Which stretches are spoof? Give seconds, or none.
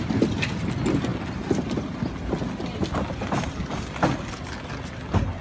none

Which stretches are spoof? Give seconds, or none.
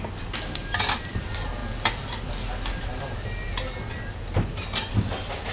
none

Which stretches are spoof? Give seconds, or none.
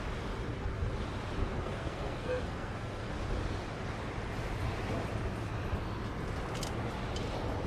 1.4-3.1 (codec, SNAC)